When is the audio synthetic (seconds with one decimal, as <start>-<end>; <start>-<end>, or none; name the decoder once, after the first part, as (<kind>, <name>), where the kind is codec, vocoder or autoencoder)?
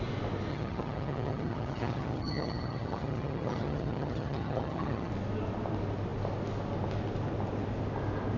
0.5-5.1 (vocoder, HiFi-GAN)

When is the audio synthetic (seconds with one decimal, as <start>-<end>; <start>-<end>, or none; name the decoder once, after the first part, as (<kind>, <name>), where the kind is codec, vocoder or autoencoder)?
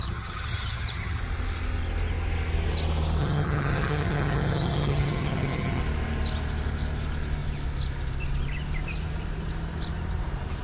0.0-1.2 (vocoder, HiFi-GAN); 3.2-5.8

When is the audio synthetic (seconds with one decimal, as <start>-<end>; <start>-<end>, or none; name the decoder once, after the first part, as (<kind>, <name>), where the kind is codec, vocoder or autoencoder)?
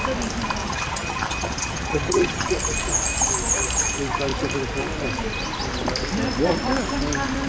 0.6-2.5 (vocoder, HiFi-GAN)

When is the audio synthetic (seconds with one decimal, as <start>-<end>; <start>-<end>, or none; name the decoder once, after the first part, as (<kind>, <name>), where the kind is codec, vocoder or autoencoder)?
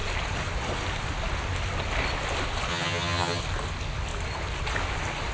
2.7-3.4 (vocoder, HiFi-GAN)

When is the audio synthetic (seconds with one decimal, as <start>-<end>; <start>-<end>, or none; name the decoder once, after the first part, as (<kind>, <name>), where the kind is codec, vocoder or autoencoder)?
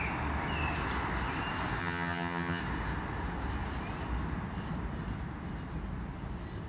1.8-2.6 (vocoder, HiFi-GAN)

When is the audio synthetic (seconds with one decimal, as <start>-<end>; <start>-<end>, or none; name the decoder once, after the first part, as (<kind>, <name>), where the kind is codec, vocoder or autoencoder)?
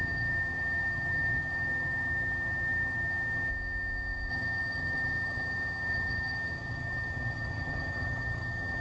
0.0-3.5 (vocoder, HiFi-GAN); 4.3-8.8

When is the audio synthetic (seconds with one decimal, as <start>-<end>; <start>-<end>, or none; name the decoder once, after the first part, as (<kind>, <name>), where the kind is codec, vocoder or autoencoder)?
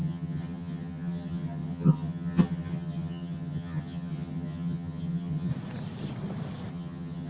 0.0-5.5 (vocoder, HiFi-GAN); 6.7-7.3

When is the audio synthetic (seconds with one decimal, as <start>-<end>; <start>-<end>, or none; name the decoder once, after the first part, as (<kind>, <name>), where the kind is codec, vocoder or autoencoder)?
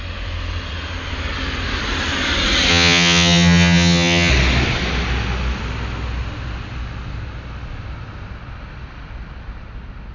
2.7-4.3 (vocoder, HiFi-GAN)